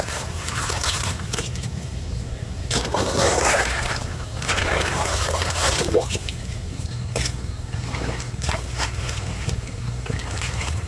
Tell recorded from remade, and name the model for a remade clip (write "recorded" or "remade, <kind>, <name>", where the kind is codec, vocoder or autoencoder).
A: remade, codec, SNAC